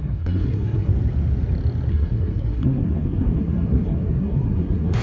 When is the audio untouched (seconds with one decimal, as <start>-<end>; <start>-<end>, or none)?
0.9-1.9